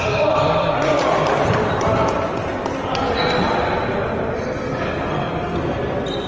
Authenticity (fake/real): real